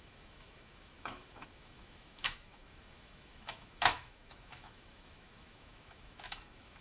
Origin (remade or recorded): remade